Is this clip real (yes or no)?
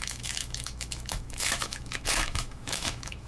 no